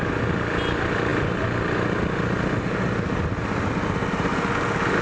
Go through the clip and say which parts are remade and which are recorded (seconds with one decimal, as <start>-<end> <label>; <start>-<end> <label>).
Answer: 0.0-5.0 recorded